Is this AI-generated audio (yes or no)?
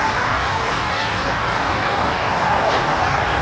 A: yes